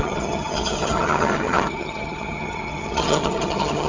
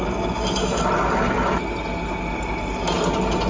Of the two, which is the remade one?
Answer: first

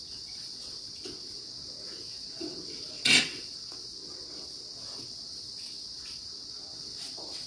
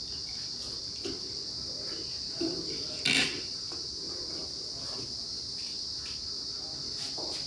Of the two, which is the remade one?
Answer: first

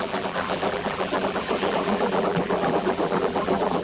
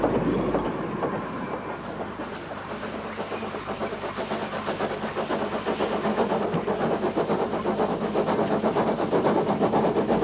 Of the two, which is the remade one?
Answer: first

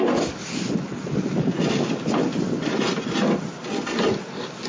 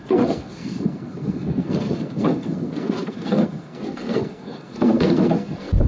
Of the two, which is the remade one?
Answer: second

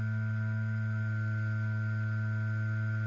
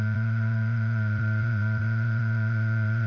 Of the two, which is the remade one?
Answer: second